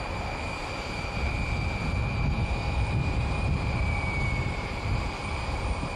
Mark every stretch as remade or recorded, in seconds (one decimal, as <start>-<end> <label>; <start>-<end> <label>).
0.0-0.6 recorded; 0.6-1.3 remade; 1.3-3.0 recorded; 3.0-6.0 remade